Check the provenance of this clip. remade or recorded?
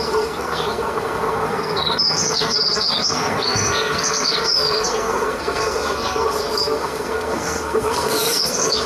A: remade